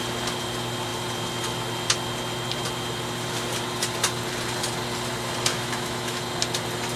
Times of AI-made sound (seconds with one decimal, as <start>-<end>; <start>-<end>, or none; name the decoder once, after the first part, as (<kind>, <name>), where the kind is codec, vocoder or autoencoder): 5.5-6.2 (autoencoder, DAC-VAE)